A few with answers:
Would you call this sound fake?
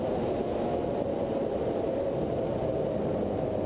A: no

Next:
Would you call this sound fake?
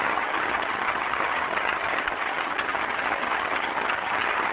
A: yes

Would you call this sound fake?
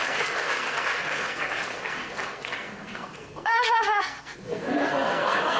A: yes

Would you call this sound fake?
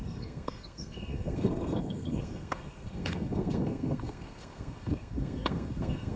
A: yes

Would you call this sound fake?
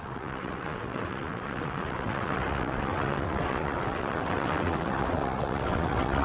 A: yes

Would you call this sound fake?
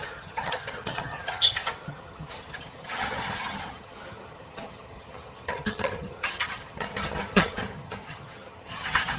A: yes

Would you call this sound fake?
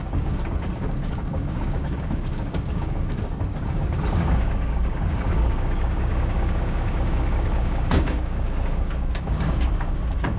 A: yes